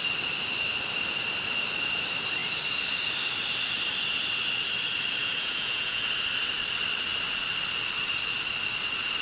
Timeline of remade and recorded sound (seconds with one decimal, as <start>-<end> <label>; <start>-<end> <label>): 0.0-5.2 recorded; 5.2-6.1 remade; 6.1-9.2 recorded